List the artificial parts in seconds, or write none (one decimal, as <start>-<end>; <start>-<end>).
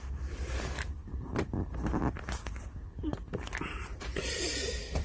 none